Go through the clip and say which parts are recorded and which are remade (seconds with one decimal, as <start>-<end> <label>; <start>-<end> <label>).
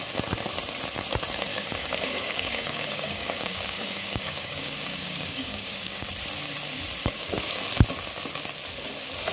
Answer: 0.0-1.5 recorded; 1.5-6.1 remade; 6.1-7.0 recorded; 7.0-7.6 remade; 7.6-9.3 recorded